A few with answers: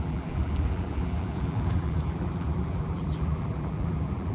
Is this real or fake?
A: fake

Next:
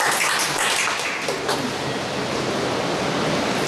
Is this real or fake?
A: real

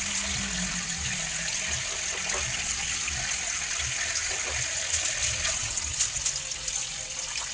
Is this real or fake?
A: real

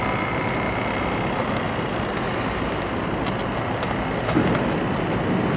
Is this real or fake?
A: real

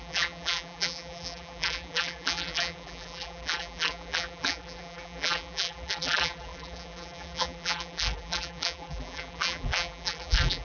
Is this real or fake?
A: fake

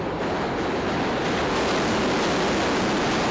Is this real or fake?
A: real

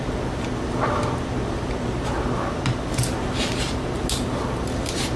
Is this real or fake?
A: real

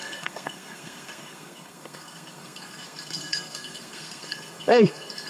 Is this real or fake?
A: fake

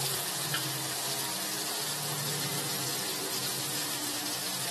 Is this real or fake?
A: real